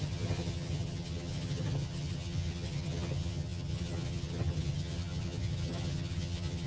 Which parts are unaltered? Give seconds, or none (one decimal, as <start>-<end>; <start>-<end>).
none